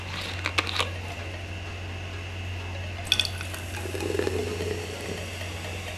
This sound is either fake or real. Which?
real